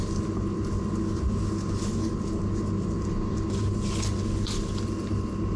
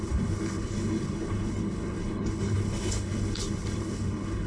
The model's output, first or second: second